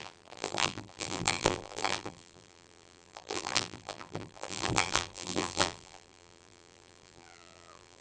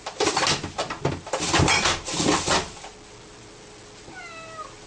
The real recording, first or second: second